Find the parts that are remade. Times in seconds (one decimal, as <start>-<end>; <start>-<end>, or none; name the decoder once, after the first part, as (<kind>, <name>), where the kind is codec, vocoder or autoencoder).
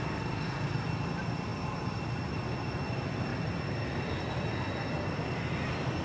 none